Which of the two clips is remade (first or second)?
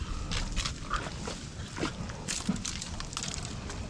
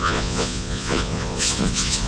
second